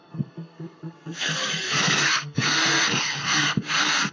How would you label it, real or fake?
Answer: fake